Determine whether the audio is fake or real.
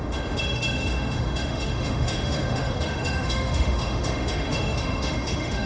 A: fake